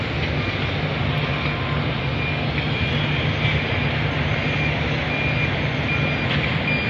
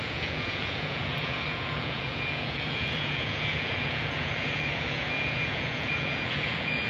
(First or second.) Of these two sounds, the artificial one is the second